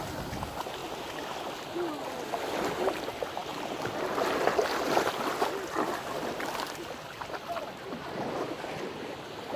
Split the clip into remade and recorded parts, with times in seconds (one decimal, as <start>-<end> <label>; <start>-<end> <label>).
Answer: 0.0-9.6 recorded